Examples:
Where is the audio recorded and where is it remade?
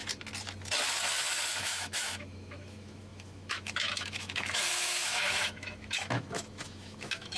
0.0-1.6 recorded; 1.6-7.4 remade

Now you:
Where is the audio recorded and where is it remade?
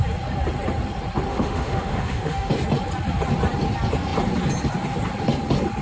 0.0-1.3 recorded; 1.3-2.5 remade; 2.5-5.8 recorded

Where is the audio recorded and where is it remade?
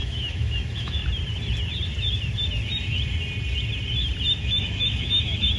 0.0-1.0 remade; 1.0-4.4 recorded; 4.4-5.6 remade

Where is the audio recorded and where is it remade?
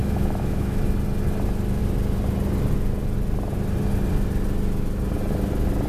0.0-0.8 remade; 0.8-5.9 recorded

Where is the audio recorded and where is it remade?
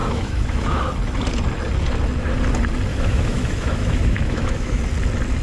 0.0-0.8 remade; 0.8-2.9 recorded; 2.9-4.8 remade; 4.8-5.4 recorded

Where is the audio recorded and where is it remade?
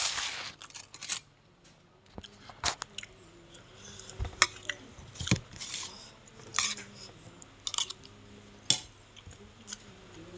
0.0-10.4 recorded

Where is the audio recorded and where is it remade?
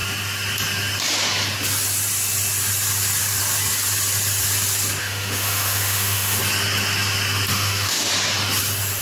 0.0-5.0 recorded; 5.0-6.4 remade; 6.4-7.5 recorded; 7.5-8.1 remade; 8.1-9.0 recorded